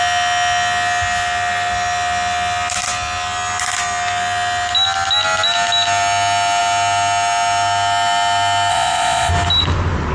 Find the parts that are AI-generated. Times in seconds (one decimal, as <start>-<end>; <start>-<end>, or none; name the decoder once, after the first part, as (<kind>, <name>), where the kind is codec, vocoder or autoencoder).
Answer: 8.7-9.3 (vocoder, Vocos)